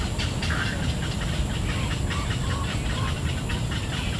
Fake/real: real